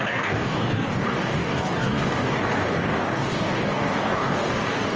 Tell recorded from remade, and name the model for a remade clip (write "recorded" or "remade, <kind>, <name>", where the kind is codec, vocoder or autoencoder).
remade, codec, DAC